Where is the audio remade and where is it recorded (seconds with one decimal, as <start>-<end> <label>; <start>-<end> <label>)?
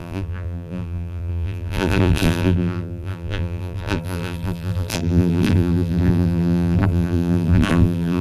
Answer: 0.0-8.2 remade